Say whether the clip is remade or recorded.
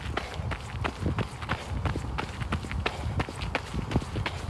recorded